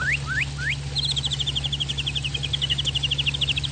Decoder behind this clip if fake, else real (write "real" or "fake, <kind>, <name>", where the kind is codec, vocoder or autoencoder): real